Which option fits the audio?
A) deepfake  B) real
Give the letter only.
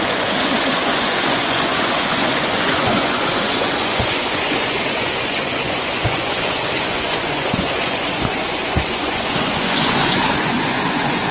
A